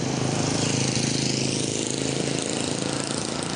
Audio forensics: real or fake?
real